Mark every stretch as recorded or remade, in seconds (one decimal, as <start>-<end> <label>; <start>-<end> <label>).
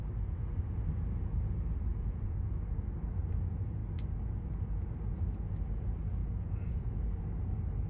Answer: 0.0-1.9 recorded; 1.9-2.5 remade; 2.5-6.2 recorded; 6.2-6.9 remade; 6.9-7.9 recorded